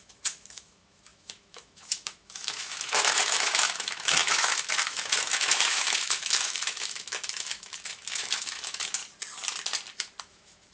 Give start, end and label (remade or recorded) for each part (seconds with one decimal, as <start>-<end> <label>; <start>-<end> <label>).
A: 0.0-9.0 remade; 9.0-10.2 recorded; 10.2-10.7 remade